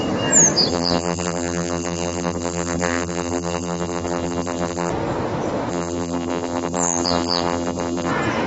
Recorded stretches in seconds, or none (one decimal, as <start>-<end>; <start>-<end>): 0.0-0.7; 4.9-5.7; 8.1-8.5